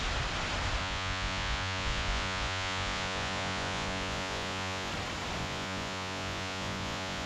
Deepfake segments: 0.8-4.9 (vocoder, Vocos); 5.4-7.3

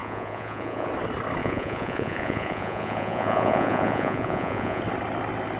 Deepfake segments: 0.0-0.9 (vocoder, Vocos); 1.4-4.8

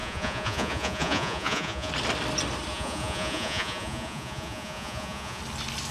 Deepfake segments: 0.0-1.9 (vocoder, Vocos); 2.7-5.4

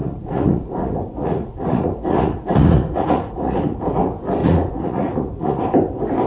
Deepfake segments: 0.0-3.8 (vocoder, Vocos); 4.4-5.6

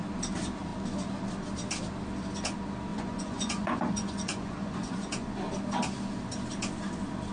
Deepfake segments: 2.9-5.3 (vocoder, Vocos)

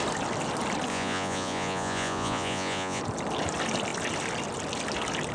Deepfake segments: 0.9-3.0 (vocoder, Vocos)